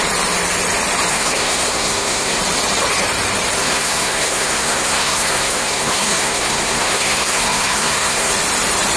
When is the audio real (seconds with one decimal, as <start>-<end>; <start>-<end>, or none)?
0.0-1.1; 2.4-3.6; 8.3-9.0